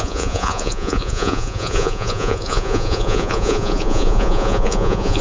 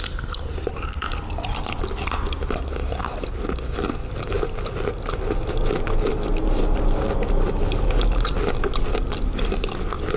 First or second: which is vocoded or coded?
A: first